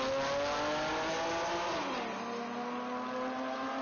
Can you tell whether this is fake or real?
real